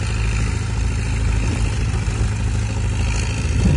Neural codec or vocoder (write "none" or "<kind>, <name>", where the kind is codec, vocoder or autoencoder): none